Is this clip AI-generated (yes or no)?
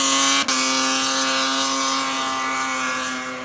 no